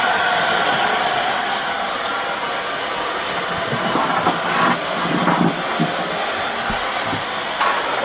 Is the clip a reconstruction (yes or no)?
no